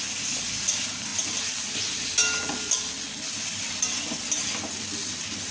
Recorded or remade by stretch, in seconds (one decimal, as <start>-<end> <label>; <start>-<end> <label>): 0.0-5.5 recorded